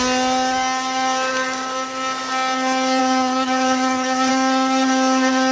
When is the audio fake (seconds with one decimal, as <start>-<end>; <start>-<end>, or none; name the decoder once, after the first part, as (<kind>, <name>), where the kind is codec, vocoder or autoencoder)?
3.0-4.3 (vocoder, HiFi-GAN)